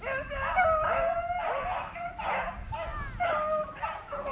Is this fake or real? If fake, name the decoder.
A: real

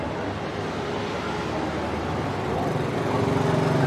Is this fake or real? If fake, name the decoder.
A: real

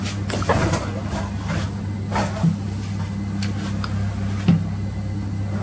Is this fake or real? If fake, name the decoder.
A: real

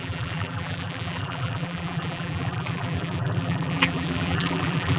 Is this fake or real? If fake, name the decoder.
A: fake, vocoder, BigVGAN v2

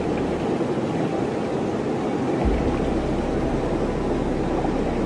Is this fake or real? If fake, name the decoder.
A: real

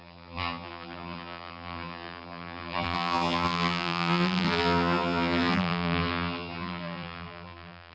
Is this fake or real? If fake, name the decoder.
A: fake, vocoder, BigVGAN v2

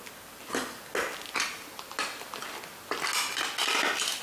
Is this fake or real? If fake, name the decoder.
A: real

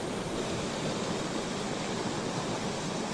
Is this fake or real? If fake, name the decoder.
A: real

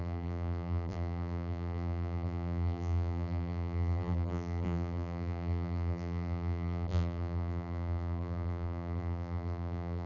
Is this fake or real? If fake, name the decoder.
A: fake, vocoder, BigVGAN v2